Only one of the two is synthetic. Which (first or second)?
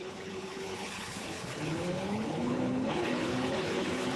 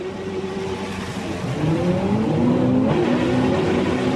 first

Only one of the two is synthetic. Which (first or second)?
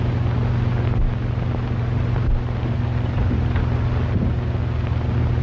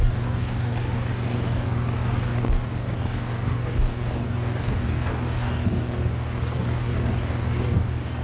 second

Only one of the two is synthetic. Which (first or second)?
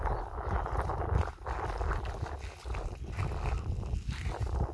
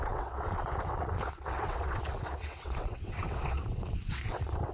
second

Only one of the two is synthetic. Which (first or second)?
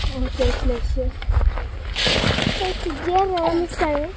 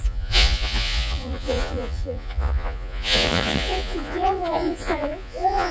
second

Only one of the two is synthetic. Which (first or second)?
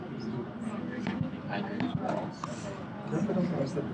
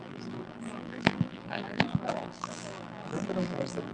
second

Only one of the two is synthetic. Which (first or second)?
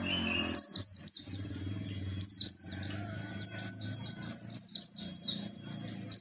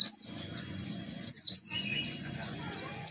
second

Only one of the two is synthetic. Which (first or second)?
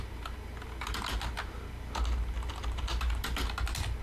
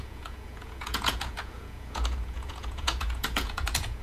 second